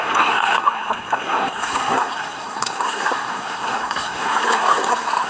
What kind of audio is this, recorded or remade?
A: remade